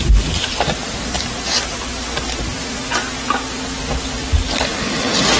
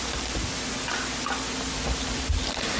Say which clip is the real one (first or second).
second